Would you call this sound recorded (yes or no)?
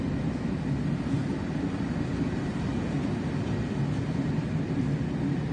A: yes